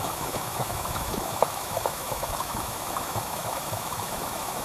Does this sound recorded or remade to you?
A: remade